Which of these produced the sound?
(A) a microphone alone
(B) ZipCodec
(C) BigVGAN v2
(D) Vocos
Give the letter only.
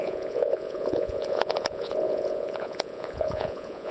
D